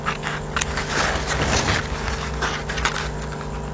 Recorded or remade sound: recorded